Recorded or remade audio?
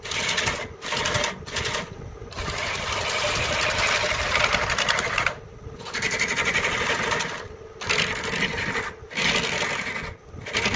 recorded